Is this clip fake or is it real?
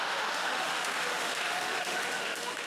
fake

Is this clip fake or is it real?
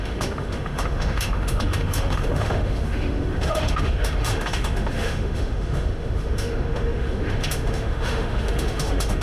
fake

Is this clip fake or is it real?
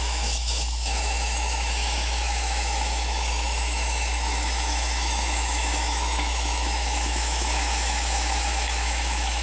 fake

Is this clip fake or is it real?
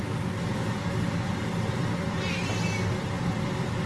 real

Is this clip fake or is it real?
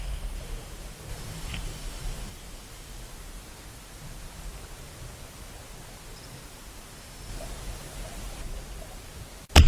real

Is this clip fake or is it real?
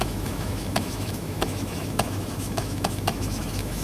fake